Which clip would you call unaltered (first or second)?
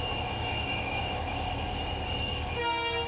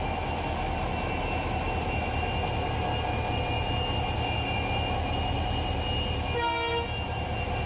second